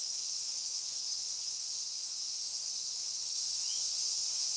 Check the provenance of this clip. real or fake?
fake